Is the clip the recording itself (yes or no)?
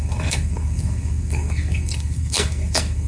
no